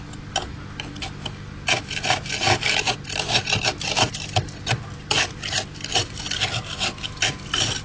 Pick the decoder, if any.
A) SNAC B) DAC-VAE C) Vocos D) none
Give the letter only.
D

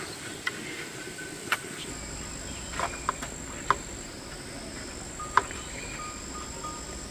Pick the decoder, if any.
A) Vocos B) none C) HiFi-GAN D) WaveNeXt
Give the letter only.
B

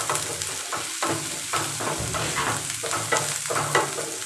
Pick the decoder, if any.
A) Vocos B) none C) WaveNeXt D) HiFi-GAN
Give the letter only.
B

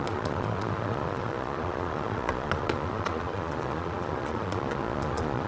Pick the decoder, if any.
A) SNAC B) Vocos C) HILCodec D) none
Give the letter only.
B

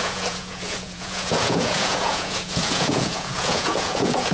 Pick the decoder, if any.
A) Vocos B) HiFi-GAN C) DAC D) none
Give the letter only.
A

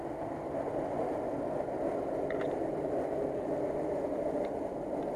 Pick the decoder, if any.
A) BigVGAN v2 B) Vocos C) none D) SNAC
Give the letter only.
C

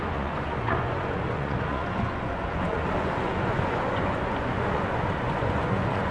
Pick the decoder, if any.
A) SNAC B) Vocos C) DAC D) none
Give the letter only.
B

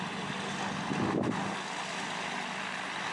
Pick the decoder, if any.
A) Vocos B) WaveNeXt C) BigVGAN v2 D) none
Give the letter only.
D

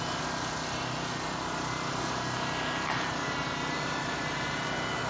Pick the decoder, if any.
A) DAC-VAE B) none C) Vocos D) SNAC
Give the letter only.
B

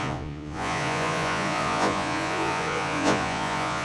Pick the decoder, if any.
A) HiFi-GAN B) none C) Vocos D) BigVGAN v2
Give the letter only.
C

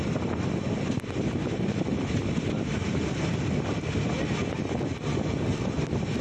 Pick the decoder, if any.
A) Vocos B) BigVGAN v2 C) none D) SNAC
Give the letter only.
C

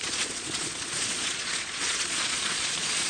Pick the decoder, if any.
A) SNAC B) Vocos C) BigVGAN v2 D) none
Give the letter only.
B